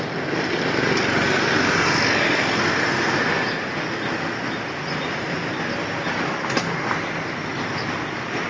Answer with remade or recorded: recorded